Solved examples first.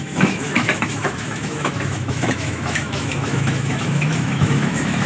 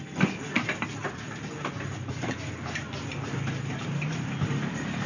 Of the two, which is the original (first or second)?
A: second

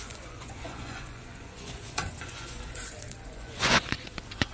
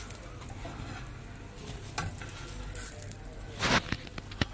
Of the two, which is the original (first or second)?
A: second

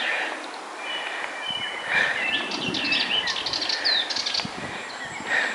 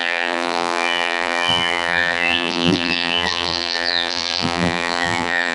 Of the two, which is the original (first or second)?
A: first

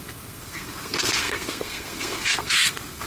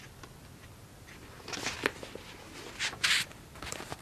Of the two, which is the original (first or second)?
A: second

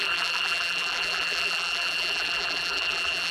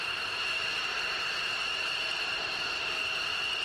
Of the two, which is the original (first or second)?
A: second